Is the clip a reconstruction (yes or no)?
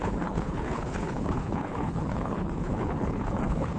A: yes